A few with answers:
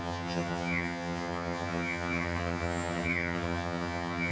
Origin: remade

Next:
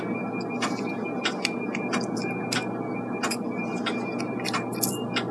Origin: recorded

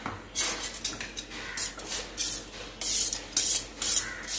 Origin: recorded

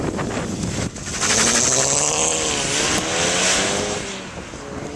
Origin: recorded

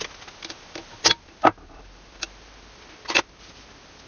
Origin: recorded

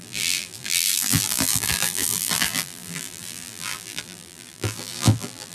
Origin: remade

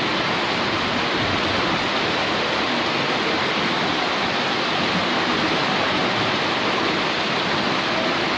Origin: recorded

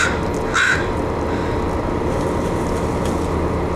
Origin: recorded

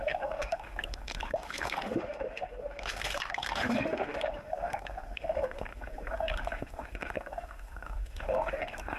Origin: remade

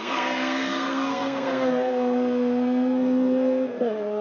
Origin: remade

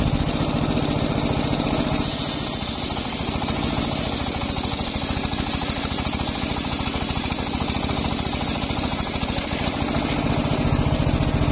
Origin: recorded